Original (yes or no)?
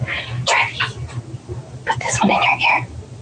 yes